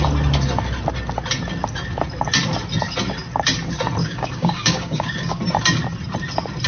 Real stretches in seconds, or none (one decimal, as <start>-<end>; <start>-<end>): 0.0-4.0; 5.4-6.7